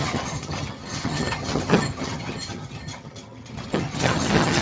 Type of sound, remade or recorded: remade